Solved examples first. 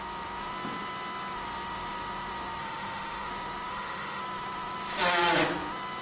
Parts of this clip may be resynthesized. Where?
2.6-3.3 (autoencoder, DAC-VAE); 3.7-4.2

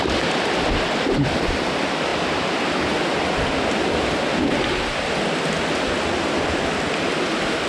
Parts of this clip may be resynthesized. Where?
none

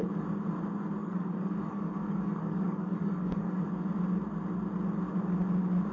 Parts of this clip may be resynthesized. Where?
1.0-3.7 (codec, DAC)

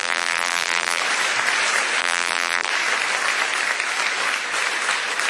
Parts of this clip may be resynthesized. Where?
0.0-1.0 (vocoder, BigVGAN v2); 2.0-2.7